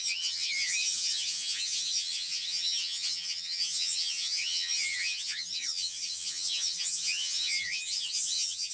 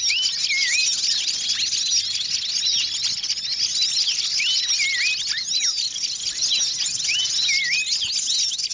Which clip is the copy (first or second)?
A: first